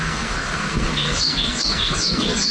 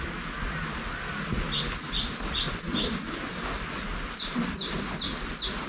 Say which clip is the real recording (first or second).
second